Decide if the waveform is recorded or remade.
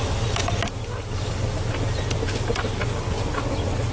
recorded